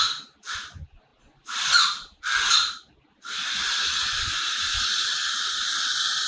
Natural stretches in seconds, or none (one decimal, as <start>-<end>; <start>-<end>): 0.0-6.3